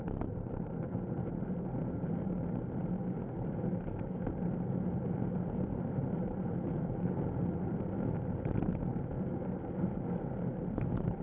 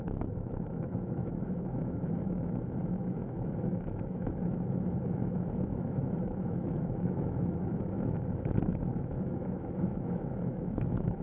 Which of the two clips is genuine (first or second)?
first